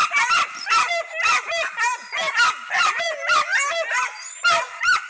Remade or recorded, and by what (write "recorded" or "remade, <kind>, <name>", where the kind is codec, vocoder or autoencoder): recorded